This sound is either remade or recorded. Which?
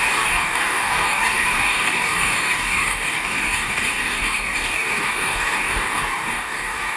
remade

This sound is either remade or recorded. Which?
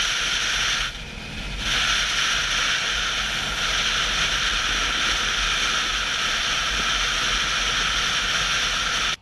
recorded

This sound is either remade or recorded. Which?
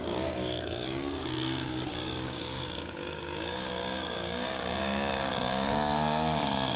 remade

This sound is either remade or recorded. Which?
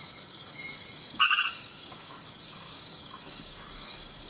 remade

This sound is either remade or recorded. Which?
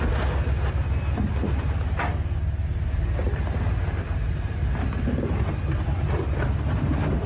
recorded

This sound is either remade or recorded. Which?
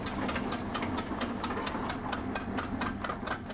recorded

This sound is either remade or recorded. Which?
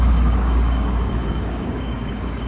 remade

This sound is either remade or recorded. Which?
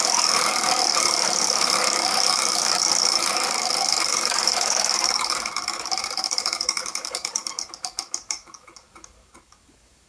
remade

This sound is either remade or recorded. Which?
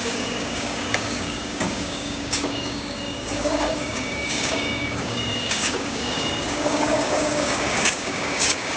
remade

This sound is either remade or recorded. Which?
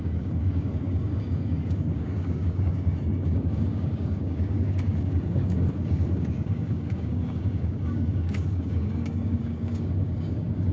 remade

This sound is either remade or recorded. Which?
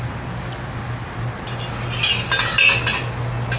recorded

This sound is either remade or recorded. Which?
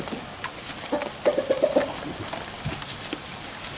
recorded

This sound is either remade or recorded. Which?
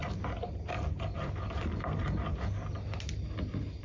recorded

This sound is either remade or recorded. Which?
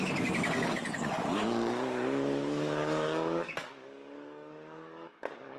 remade